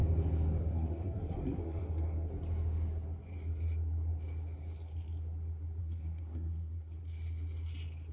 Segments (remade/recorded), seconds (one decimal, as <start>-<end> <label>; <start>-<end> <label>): 0.0-0.6 recorded; 0.6-2.3 remade; 2.3-5.8 recorded; 5.8-7.0 remade; 7.0-8.1 recorded